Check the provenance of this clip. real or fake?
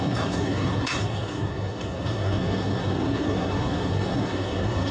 fake